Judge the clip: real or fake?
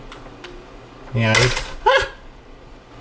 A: real